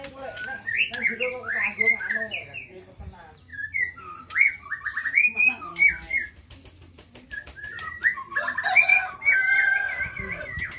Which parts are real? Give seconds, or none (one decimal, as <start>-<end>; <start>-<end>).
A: 0.0-10.8